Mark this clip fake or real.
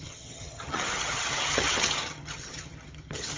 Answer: fake